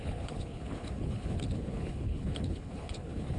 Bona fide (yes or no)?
no